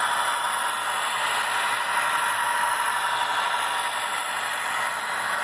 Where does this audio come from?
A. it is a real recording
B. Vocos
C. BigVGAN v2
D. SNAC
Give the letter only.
A